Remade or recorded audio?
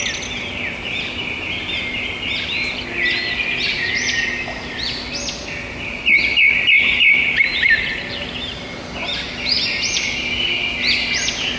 recorded